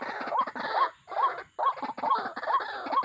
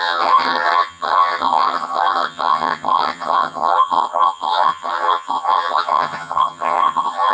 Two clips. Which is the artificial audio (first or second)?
second